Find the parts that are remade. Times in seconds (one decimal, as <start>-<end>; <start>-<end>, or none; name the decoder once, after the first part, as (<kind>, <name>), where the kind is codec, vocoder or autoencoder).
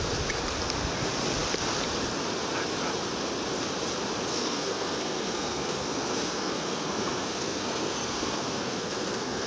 4.3-9.5 (codec, SNAC)